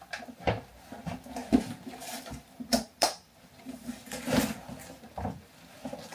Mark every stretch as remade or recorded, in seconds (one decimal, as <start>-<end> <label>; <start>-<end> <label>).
0.0-1.4 recorded; 1.4-5.1 remade; 5.1-6.1 recorded